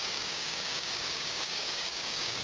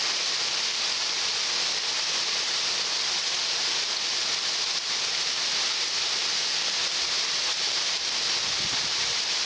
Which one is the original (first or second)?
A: second